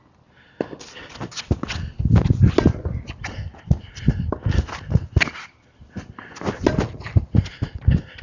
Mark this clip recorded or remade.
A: recorded